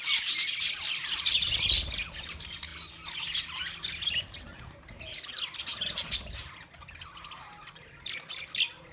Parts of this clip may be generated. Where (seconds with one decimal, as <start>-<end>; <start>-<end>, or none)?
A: none